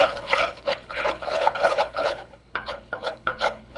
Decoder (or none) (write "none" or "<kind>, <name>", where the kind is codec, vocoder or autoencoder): codec, HILCodec